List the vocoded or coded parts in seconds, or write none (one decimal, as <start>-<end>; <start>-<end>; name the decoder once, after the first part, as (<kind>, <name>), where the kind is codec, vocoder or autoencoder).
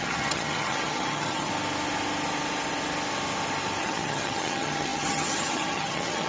0.0-1.5 (vocoder, HiFi-GAN); 3.8-6.3